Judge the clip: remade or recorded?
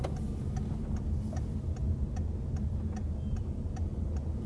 recorded